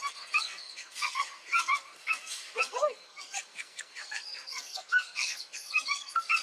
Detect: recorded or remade remade